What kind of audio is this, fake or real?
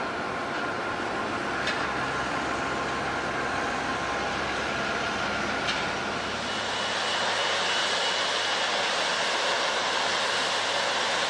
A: real